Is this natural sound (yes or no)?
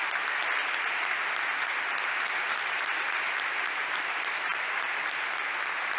yes